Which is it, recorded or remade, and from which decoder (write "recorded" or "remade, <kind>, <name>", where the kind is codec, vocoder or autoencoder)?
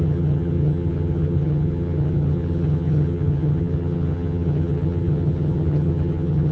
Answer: remade, vocoder, HiFi-GAN